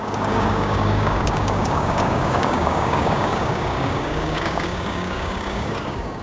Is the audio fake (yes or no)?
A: yes